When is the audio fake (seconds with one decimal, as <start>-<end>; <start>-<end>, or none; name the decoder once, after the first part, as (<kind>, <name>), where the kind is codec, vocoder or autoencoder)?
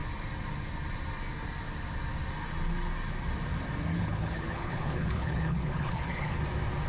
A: 3.9-6.4 (codec, HILCodec)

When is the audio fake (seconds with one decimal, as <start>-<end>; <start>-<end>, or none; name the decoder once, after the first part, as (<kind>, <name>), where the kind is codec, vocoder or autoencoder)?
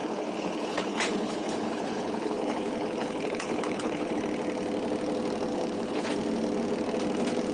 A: 0.0-4.2 (codec, HILCodec); 5.5-6.1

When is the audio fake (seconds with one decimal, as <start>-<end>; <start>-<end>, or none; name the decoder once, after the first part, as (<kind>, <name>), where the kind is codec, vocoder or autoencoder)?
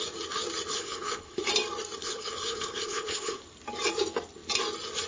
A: 0.7-1.4 (codec, HILCodec); 2.0-3.4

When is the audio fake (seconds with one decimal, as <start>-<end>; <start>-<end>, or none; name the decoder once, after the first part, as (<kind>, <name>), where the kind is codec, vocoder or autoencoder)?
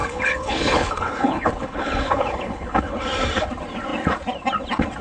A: 0.0-3.0 (codec, HILCodec)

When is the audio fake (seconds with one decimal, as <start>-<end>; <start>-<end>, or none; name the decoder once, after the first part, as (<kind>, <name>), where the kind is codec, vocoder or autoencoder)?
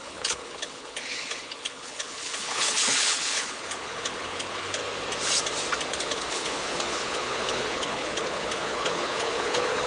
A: 0.0-4.8 (codec, HILCodec); 5.9-9.9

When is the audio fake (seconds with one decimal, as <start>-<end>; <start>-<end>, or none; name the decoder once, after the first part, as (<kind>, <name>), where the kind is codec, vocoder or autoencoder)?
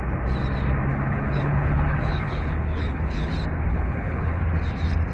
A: 0.9-3.3 (codec, HILCodec); 3.7-4.4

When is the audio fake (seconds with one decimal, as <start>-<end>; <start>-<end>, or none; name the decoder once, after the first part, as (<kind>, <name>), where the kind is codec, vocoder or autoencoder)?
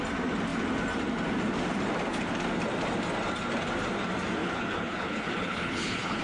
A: 4.4-6.2 (codec, HILCodec)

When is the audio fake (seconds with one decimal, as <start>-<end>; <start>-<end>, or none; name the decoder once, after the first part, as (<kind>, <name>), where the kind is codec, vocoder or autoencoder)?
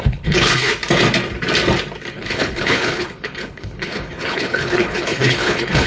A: 0.0-0.7 (codec, HILCodec); 2.1-5.9